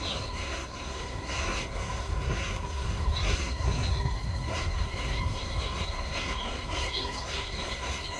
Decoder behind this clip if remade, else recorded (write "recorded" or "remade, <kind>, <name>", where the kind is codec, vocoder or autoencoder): remade, codec, SNAC